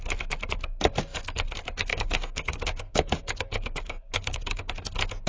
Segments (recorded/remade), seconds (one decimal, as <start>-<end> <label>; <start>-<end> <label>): 0.0-1.9 recorded; 1.9-4.7 remade; 4.7-5.3 recorded